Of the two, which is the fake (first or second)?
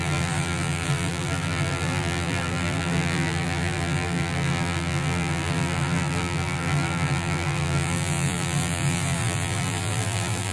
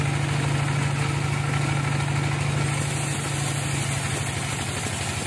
first